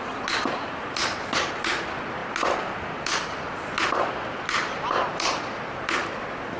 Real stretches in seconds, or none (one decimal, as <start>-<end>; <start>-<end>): 0.0-6.6